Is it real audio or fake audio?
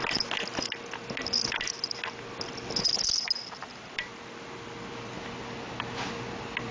real